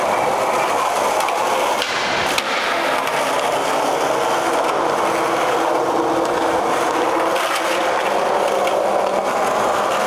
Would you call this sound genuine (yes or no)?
yes